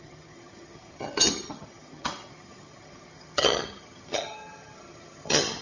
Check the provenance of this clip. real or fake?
fake